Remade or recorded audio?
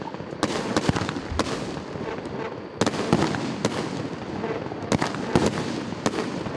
recorded